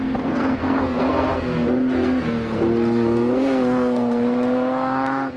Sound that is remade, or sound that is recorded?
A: remade